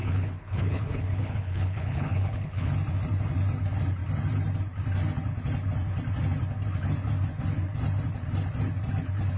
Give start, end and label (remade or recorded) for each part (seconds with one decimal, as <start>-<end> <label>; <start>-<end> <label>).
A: 0.0-2.7 remade; 2.7-9.4 recorded